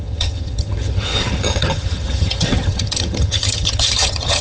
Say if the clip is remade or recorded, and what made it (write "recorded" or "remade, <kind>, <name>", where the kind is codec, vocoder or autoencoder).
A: remade, vocoder, HiFi-GAN